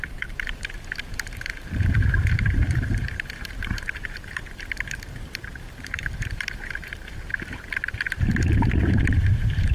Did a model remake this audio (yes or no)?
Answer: yes